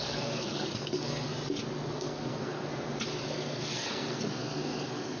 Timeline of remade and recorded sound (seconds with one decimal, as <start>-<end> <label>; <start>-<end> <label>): 0.0-1.3 remade; 1.3-1.9 recorded; 1.9-2.7 remade; 2.7-3.3 recorded; 3.3-5.2 remade